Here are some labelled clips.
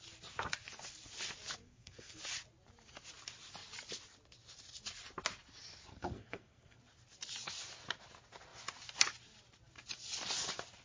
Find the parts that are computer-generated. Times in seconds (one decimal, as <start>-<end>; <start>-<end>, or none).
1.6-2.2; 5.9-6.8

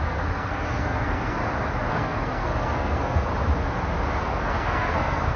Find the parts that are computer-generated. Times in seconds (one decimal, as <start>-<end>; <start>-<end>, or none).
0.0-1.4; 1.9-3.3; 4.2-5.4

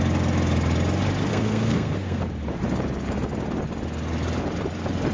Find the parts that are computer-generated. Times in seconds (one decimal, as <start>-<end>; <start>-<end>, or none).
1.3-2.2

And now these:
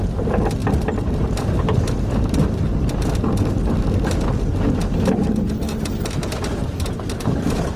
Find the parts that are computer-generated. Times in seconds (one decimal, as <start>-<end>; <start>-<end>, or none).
none

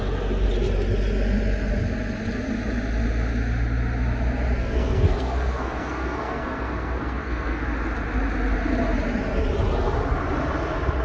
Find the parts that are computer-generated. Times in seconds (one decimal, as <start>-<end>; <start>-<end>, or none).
4.6-7.6

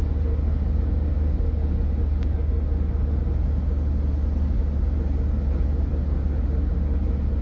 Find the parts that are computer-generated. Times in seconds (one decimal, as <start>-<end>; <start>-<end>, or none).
none

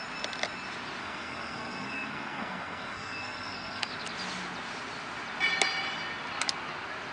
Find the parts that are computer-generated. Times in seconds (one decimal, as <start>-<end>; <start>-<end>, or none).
1.0-3.9

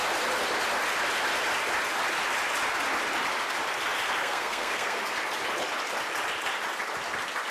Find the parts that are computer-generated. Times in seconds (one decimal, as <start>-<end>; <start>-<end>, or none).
4.2-5.0